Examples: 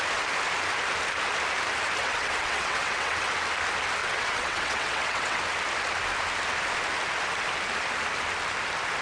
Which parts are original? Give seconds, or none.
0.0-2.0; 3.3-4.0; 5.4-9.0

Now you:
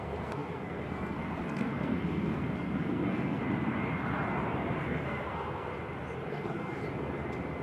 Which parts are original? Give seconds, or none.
3.4-4.8; 5.7-6.3; 6.8-7.6

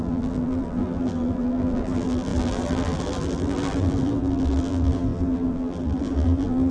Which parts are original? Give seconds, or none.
none

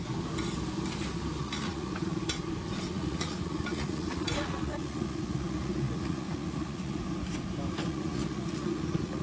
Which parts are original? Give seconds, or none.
0.0-1.4; 2.2-2.9; 7.0-7.7

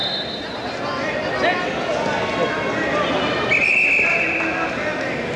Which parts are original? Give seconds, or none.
0.0-5.4

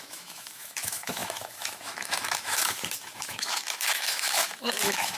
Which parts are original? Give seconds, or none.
none

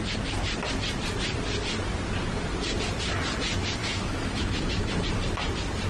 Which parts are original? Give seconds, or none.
0.0-3.8; 4.9-5.9

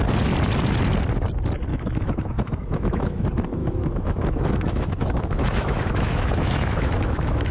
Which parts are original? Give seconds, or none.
0.0-1.7; 3.2-3.6